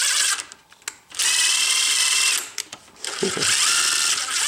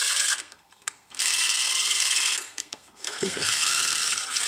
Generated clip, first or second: second